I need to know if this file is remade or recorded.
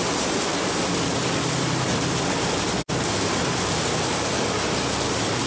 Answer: recorded